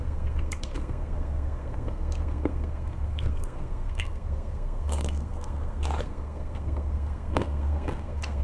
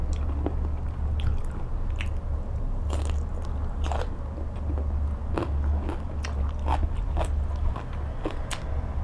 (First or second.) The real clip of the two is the second